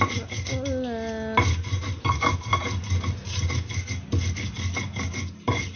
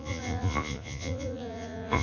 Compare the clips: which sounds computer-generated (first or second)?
second